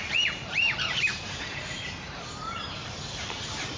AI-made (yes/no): yes